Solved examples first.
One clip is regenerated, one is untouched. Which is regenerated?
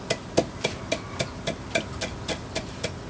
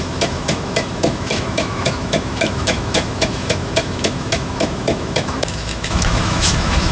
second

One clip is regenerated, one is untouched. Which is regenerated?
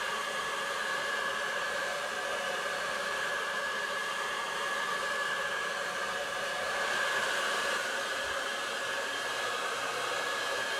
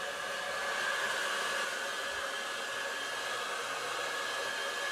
first